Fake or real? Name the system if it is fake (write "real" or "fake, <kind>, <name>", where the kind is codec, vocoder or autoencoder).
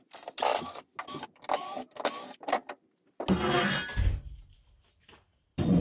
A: real